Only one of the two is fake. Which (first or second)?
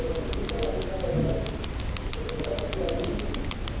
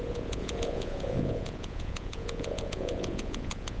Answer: second